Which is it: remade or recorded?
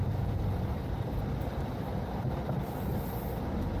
recorded